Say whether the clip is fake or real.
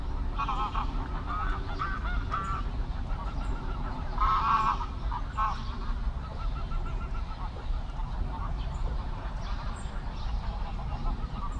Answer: real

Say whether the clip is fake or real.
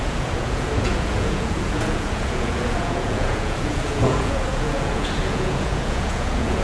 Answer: fake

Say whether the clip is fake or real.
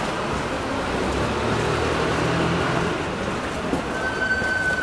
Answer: real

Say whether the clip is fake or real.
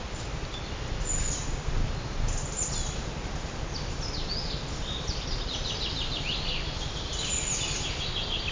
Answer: real